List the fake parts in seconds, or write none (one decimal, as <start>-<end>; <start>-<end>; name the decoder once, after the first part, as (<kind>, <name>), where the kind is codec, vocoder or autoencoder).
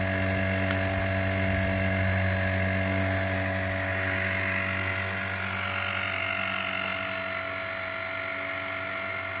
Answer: none